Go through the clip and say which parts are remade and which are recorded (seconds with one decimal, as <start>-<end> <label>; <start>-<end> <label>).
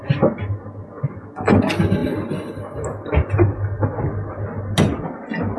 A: 0.0-5.6 recorded